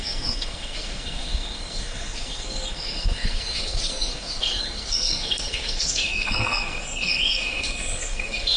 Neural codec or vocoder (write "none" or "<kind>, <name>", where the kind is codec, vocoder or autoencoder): codec, SNAC